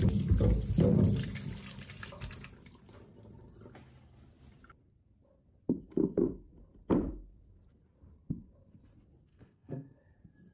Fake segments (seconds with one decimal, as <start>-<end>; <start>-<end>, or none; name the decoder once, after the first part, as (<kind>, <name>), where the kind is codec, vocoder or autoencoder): 9.3-10.0 (codec, SNAC)